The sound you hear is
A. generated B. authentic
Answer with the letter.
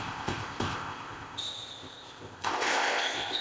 A